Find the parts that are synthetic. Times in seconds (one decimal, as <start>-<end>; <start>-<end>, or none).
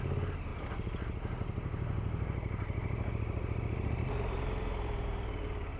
none